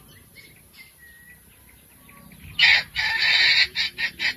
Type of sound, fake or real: real